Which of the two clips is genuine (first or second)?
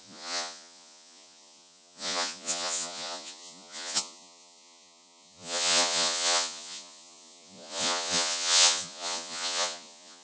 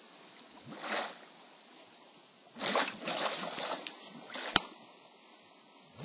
second